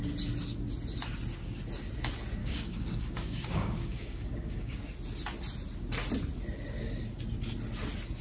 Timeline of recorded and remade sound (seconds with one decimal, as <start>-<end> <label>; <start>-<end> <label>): 0.0-2.4 recorded; 2.4-4.8 remade; 4.8-8.2 recorded